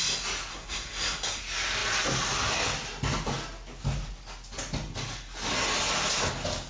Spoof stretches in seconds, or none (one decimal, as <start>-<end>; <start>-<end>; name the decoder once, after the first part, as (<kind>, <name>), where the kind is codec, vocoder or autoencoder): 0.5-1.4 (codec, SNAC)